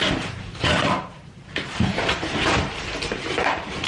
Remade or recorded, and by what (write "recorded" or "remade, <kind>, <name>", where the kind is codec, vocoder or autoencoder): remade, vocoder, BigVGAN v2